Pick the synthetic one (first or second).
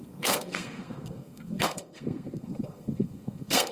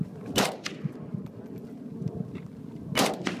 first